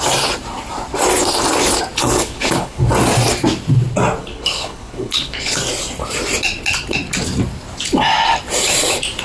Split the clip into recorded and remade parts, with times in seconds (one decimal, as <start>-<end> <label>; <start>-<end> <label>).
0.0-2.0 recorded; 2.0-2.9 remade; 2.9-4.2 recorded; 4.2-5.6 remade; 5.6-9.2 recorded